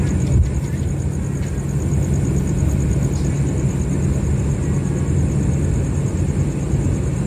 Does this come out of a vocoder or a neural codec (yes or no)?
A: no